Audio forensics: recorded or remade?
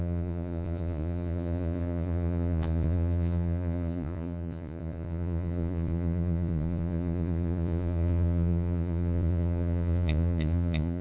remade